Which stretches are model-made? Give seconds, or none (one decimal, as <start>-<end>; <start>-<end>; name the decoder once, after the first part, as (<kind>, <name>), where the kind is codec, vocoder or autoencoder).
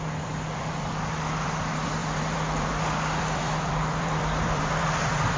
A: 0.0-5.4 (vocoder, BigVGAN v2)